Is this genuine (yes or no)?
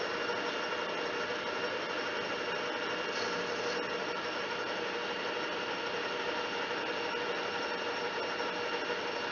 yes